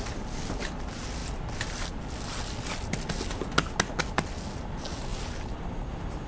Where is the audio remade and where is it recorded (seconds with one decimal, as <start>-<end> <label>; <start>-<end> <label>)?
0.0-6.3 recorded